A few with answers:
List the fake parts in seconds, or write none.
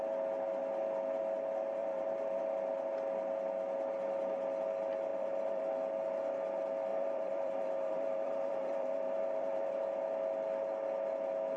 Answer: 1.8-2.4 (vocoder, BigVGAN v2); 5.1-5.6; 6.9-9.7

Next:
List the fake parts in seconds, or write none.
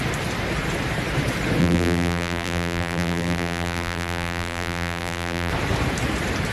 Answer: 1.6-5.5 (vocoder, BigVGAN v2)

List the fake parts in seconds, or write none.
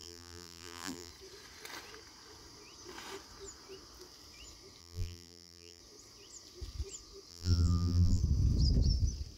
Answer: 0.0-1.1 (vocoder, BigVGAN v2); 4.8-5.8; 7.3-8.2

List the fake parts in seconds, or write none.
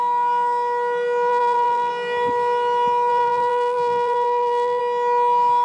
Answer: 1.3-1.9 (vocoder, BigVGAN v2); 3.1-4.8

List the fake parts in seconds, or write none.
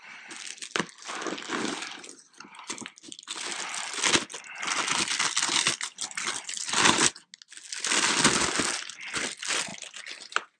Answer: none